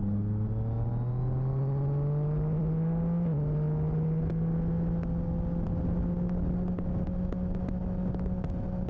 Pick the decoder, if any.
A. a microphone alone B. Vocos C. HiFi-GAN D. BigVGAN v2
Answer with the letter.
A